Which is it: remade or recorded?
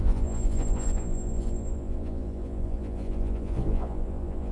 remade